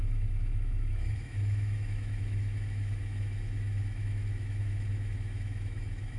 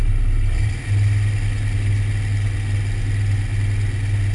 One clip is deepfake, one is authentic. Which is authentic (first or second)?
second